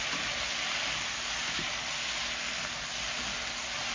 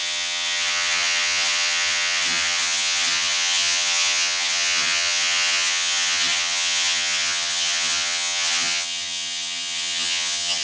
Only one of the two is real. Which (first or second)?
first